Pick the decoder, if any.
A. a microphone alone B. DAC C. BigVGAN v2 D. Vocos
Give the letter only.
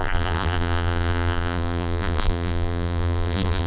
C